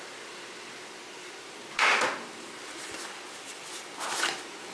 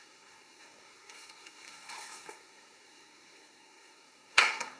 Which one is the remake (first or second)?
second